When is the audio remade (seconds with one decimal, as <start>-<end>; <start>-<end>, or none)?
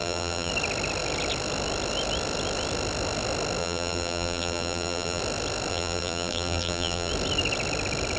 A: 0.0-0.5; 3.6-5.2; 5.7-7.1